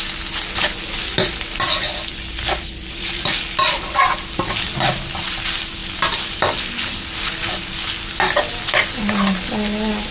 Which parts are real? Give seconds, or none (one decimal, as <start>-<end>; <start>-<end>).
0.0-10.1